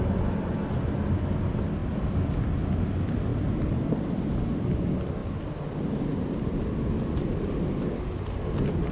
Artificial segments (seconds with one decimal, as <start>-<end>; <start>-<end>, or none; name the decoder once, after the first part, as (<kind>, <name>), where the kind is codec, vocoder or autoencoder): 1.8-2.4 (vocoder, BigVGAN v2)